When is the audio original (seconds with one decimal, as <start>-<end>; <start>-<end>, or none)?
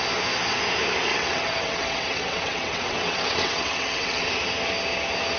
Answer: 0.0-1.1; 4.3-5.4